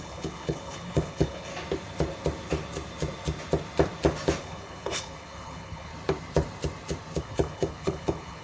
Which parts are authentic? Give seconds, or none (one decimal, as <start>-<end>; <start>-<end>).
1.5-4.4; 5.9-7.2

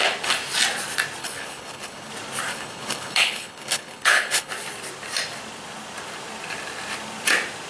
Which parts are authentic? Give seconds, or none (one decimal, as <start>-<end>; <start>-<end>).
0.0-1.2; 2.1-2.5; 4.5-7.7

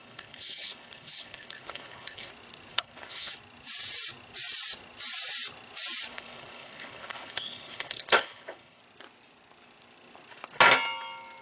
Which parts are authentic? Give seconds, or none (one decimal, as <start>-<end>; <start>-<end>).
2.3-2.7; 3.3-6.1; 8.8-11.4

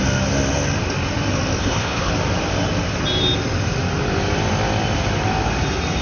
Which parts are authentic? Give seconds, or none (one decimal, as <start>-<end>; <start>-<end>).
0.0-1.6; 2.1-6.0

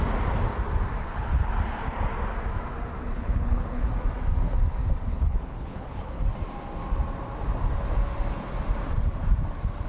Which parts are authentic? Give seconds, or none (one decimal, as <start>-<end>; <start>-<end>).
0.0-1.0; 1.5-3.0; 3.9-5.1; 6.2-9.9

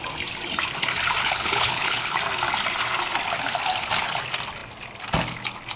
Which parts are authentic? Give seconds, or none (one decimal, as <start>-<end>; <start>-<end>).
0.0-1.2; 2.2-5.8

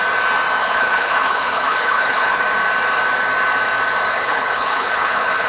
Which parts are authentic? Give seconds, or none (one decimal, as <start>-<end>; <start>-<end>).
0.0-0.6; 2.4-4.1

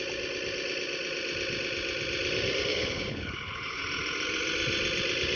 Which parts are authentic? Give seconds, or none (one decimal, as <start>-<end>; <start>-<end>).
0.0-2.7; 3.8-5.4